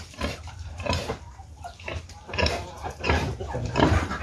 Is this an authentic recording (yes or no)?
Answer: no